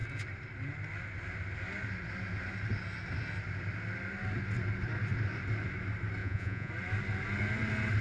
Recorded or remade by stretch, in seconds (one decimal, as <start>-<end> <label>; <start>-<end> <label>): 0.0-6.2 recorded; 6.2-6.7 remade; 6.7-8.0 recorded